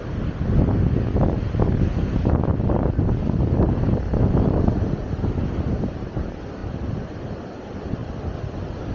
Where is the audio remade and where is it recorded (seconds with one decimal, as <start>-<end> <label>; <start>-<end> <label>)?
0.0-2.5 recorded; 2.5-4.2 remade; 4.2-6.6 recorded; 6.6-7.5 remade; 7.5-8.0 recorded; 8.0-8.9 remade